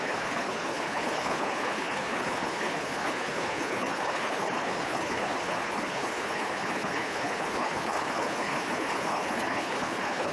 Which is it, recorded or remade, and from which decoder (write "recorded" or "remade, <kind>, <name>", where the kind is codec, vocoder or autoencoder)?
remade, codec, HILCodec